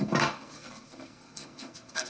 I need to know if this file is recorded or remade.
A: remade